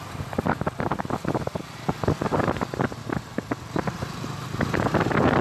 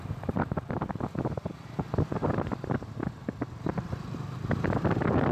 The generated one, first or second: second